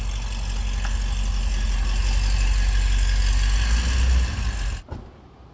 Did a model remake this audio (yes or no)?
no